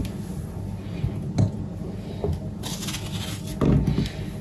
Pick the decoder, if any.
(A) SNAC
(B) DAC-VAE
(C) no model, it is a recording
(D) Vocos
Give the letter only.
C